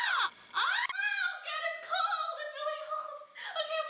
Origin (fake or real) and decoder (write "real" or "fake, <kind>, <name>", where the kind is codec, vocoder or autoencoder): real